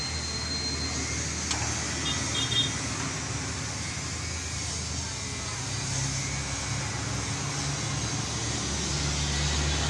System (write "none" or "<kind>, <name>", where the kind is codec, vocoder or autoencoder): none